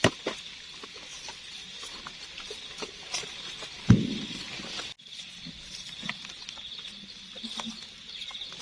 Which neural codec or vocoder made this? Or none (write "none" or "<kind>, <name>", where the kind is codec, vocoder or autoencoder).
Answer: none